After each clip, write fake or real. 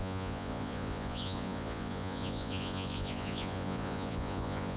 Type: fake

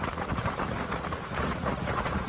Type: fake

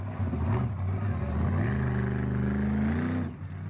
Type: real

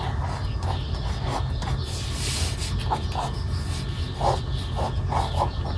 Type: real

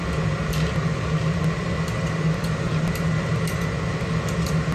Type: real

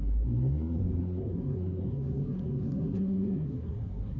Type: fake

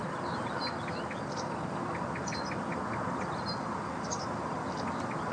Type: real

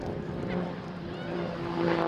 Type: fake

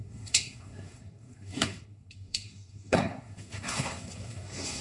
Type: fake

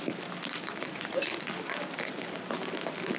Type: real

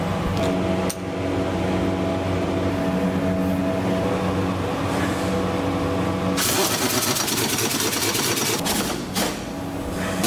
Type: real